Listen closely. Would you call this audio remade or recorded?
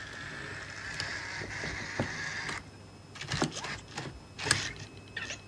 recorded